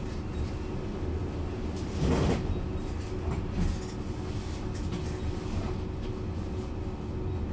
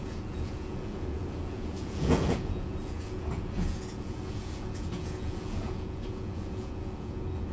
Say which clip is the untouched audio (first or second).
first